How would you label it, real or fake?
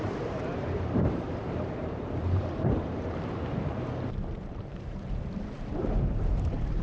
fake